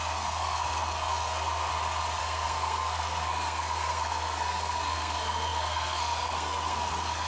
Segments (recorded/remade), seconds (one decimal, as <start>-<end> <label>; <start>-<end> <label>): 0.0-1.7 remade; 1.7-2.2 recorded; 2.2-7.3 remade